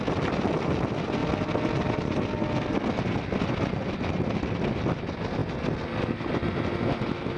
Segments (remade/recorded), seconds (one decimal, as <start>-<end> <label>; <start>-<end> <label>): 0.0-7.4 recorded